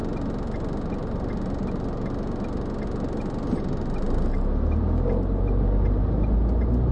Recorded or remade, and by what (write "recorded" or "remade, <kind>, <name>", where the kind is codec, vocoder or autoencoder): recorded